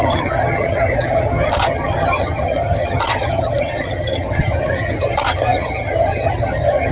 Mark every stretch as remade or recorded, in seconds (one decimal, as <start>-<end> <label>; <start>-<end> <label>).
0.0-6.9 remade